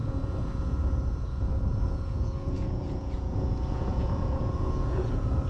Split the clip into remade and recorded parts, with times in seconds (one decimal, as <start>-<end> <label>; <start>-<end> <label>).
0.0-5.5 remade